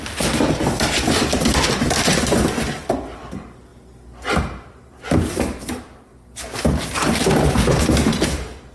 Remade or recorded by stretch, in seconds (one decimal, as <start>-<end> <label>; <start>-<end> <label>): 0.0-8.7 recorded